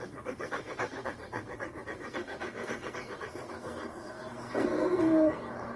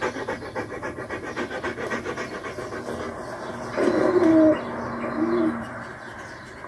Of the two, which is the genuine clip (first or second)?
second